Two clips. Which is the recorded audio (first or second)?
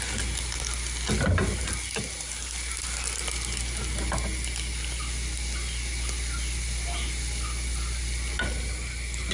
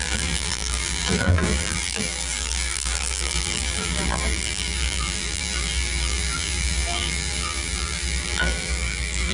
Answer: first